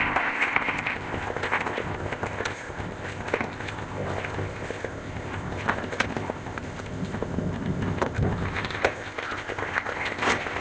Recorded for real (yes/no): no